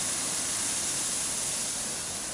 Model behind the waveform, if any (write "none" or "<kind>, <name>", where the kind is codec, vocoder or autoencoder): none